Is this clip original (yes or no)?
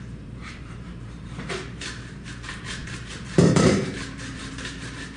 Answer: no